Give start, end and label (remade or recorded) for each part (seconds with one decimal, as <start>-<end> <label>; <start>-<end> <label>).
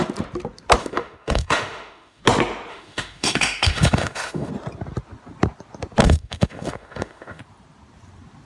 0.0-0.8 recorded; 0.8-2.2 remade; 2.2-2.7 recorded; 2.7-4.5 remade; 4.5-6.0 recorded; 6.0-7.4 remade; 7.4-8.4 recorded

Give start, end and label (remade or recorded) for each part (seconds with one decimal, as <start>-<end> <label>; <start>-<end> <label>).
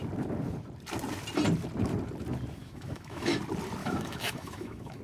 0.0-2.6 recorded; 2.6-3.4 remade; 3.4-3.8 recorded; 3.8-5.0 remade